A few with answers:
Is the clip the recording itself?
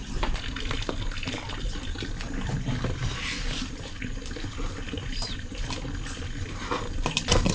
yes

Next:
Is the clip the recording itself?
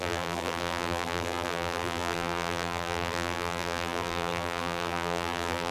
no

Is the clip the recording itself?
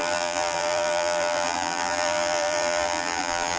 no